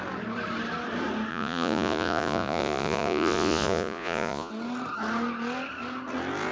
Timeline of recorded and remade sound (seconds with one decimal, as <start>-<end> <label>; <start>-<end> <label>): 0.0-1.3 recorded; 1.3-4.5 remade; 4.5-6.5 recorded